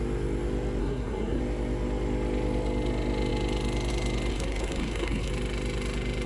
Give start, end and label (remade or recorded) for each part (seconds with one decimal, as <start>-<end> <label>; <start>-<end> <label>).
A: 0.0-0.8 recorded; 0.8-1.4 remade; 1.4-4.3 recorded; 4.3-5.3 remade; 5.3-6.3 recorded